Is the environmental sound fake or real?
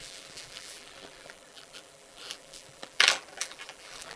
fake